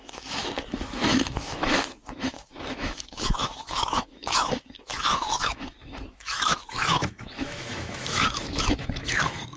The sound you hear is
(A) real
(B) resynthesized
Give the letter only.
B